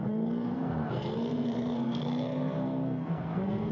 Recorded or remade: remade